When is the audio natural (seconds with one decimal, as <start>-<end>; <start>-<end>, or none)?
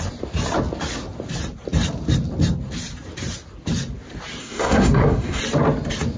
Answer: 0.0-4.4; 5.4-6.2